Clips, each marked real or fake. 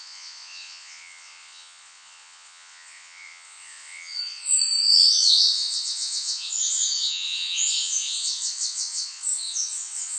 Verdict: fake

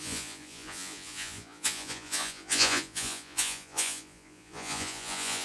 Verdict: fake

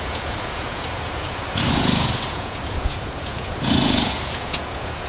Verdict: fake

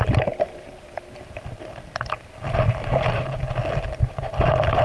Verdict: real